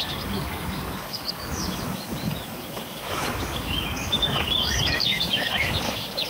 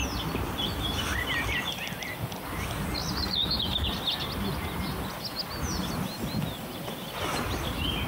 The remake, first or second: first